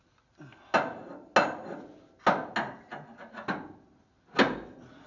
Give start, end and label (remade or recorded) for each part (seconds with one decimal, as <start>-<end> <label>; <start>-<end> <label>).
0.0-5.1 recorded